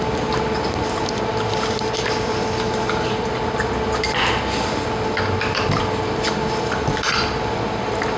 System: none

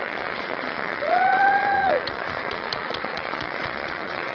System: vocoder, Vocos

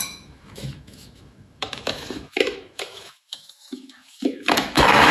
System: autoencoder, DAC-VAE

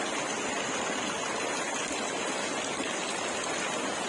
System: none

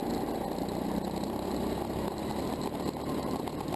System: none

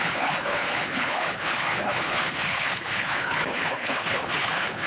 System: codec, HILCodec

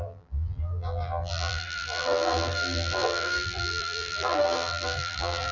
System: vocoder, BigVGAN v2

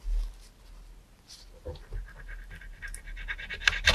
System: vocoder, BigVGAN v2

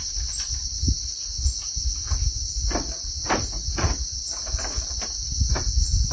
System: none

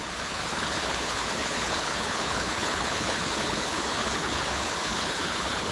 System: codec, HILCodec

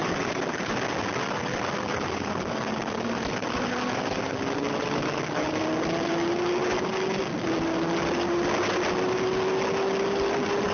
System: none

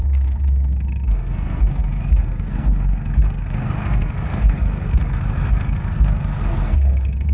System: codec, SNAC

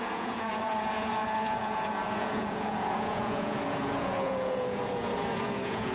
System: vocoder, Vocos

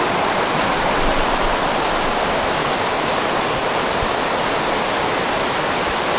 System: none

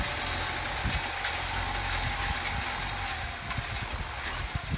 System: none